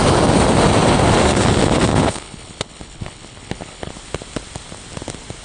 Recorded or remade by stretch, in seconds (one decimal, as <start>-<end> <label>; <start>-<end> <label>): 0.0-1.9 recorded; 1.9-3.9 remade; 3.9-5.4 recorded